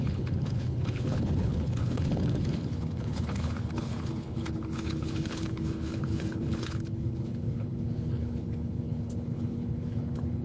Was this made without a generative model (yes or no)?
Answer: no